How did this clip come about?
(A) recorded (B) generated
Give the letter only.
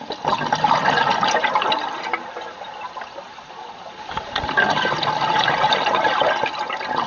A